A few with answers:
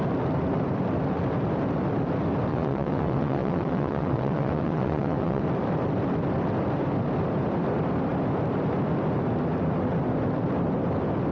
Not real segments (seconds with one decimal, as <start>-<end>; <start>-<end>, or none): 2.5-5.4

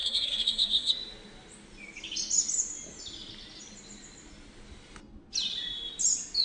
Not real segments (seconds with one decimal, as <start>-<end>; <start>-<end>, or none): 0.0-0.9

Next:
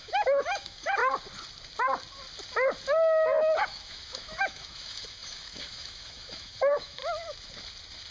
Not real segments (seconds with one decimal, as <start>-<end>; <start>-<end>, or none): 0.0-1.0; 3.6-7.0